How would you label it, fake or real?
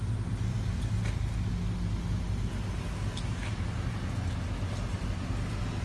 real